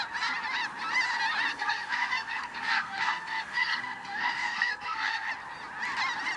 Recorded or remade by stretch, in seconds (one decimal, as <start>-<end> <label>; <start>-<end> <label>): 0.0-1.5 recorded; 1.5-5.3 remade; 5.3-6.4 recorded